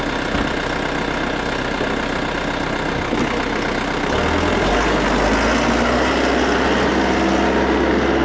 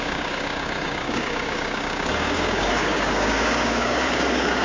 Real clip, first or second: first